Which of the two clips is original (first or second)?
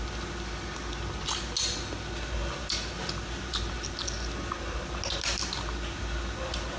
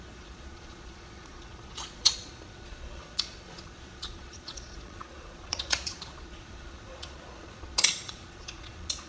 first